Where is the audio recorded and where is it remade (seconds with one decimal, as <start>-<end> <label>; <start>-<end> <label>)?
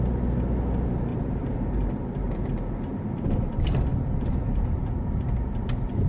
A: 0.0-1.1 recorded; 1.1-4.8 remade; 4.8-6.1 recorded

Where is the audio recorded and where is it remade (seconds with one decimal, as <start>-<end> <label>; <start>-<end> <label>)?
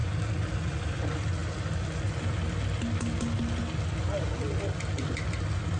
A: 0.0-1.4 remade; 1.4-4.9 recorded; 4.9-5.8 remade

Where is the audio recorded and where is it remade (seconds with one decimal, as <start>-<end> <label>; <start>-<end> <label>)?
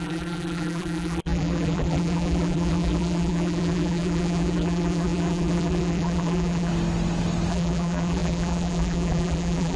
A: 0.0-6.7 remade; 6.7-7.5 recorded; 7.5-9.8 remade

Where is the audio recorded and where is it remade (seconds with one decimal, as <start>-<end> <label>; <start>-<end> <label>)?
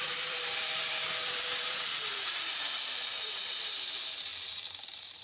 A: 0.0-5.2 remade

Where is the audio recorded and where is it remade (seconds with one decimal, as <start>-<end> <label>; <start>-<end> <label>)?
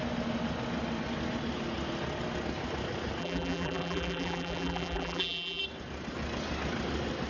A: 0.0-3.2 recorded; 3.2-5.6 remade; 5.6-7.3 recorded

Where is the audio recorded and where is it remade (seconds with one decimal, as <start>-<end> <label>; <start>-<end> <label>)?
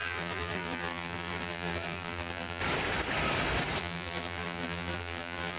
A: 0.0-2.6 remade; 2.6-3.8 recorded; 3.8-5.6 remade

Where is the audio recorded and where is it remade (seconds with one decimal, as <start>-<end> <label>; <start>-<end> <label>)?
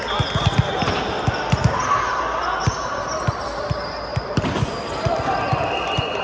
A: 0.0-2.6 recorded; 2.6-3.1 remade; 3.1-4.1 recorded; 4.1-4.7 remade; 4.7-6.2 recorded